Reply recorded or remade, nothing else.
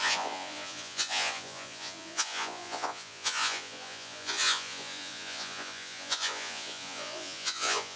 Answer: remade